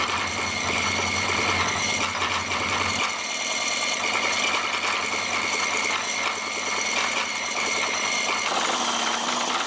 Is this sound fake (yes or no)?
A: no